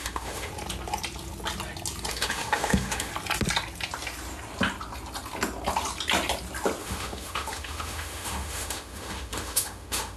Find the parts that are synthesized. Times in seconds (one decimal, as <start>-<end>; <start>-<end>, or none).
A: 0.0-0.5; 2.1-3.1; 6.8-10.2